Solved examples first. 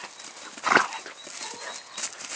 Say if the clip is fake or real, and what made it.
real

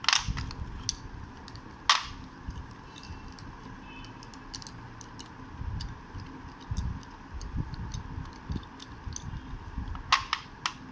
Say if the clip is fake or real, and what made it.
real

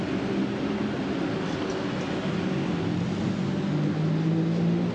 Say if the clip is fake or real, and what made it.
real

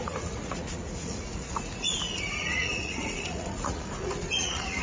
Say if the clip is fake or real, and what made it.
fake, vocoder, Vocos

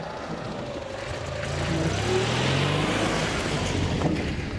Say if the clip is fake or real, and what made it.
real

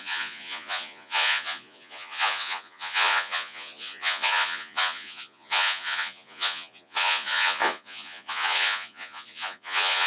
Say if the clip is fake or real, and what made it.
fake, vocoder, Vocos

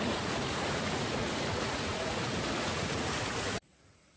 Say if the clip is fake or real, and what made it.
fake, vocoder, Vocos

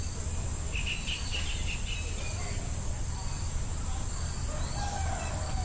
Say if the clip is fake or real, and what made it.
real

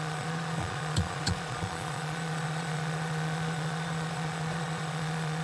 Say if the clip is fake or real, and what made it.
fake, vocoder, Vocos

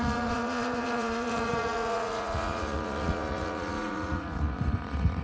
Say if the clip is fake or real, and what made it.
fake, vocoder, Vocos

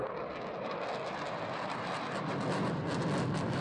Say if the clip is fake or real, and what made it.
real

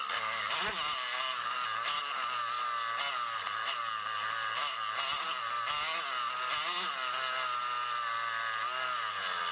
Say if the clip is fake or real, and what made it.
real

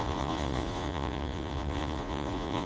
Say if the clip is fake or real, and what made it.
fake, vocoder, Vocos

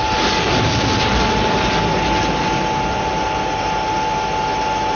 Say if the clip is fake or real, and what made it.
real